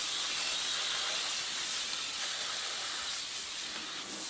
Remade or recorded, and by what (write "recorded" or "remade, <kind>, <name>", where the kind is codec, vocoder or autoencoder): recorded